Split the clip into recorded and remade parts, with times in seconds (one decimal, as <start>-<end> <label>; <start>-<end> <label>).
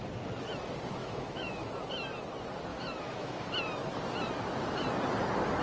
0.0-1.0 recorded; 1.0-1.7 remade; 1.7-2.7 recorded; 2.7-3.5 remade; 3.5-5.6 recorded